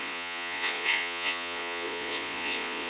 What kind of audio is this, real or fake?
fake